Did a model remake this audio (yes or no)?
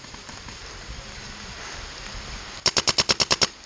no